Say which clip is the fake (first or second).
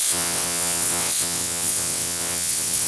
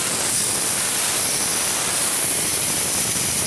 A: first